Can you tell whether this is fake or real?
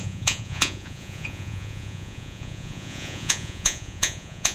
fake